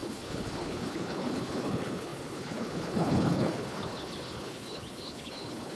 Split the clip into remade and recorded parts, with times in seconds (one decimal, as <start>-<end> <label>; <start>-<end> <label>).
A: 0.0-5.8 remade